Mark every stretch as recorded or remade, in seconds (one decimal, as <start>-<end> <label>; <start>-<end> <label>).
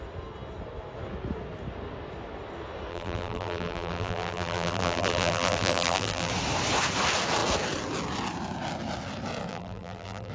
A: 0.0-2.9 recorded; 2.9-6.3 remade; 6.3-9.5 recorded; 9.5-10.3 remade